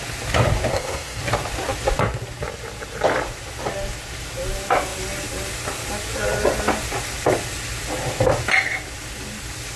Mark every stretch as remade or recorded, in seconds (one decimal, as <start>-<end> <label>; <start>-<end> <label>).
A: 0.0-0.7 recorded; 0.7-1.2 remade; 1.2-9.8 recorded